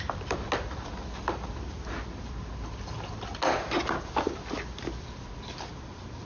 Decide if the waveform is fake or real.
real